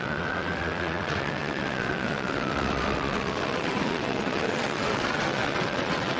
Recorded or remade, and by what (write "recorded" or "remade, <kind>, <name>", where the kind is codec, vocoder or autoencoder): remade, vocoder, WaveNeXt